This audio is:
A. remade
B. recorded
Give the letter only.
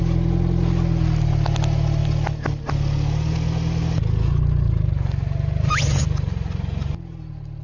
B